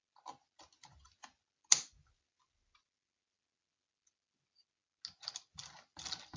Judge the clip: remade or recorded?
recorded